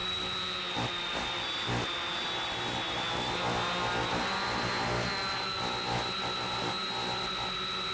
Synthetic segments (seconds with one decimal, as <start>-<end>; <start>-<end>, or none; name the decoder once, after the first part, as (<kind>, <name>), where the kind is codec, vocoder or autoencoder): 0.0-2.6 (vocoder, BigVGAN v2)